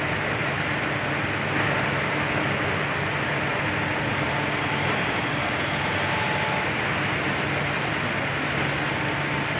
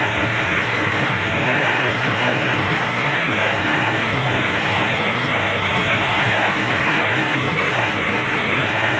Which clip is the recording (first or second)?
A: first